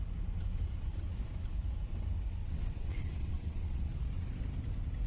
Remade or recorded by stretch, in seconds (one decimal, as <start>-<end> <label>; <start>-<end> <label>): 0.0-2.4 recorded; 2.4-3.9 remade; 3.9-5.1 recorded